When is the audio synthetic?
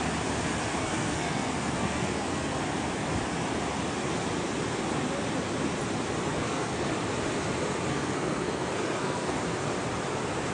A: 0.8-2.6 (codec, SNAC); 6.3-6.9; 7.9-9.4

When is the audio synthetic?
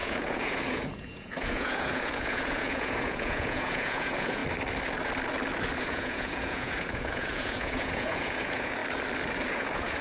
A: 0.0-4.4 (vocoder, Vocos); 5.8-8.8; 9.5-10.0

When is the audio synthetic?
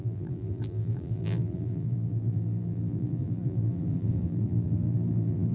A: 0.0-5.5 (vocoder, BigVGAN v2)